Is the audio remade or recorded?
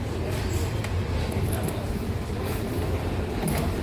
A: recorded